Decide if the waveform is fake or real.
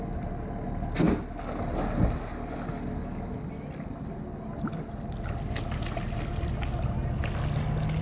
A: real